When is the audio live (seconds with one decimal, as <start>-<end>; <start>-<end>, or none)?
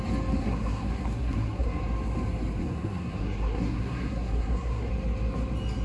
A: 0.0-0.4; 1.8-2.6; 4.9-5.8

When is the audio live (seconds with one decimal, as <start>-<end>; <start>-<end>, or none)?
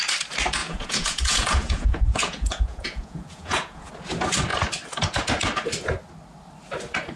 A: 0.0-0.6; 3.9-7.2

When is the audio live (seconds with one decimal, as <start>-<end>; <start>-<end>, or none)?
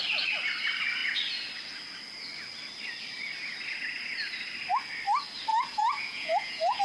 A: 0.0-5.5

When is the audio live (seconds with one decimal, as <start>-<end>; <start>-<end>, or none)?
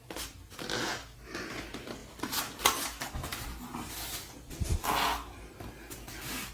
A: 0.0-6.5